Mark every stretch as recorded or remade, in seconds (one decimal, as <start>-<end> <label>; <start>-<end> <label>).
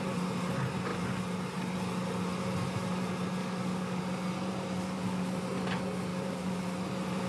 0.0-3.4 recorded; 3.4-4.0 remade; 4.0-4.8 recorded; 4.8-5.3 remade; 5.3-6.1 recorded; 6.1-6.6 remade; 6.6-7.3 recorded